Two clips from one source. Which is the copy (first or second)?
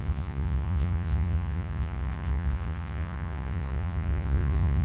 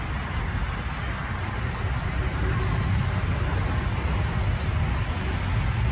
first